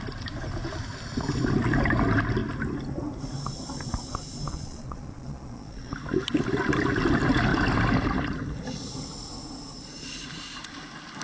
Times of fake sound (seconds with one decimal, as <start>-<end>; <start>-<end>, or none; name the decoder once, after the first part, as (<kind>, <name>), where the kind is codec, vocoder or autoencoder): 4.5-5.9 (vocoder, Vocos)